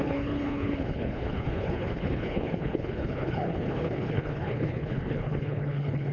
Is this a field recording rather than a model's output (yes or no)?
no